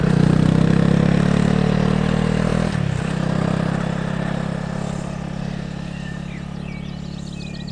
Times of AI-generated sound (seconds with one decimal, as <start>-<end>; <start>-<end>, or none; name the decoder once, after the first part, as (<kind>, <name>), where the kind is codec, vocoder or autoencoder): none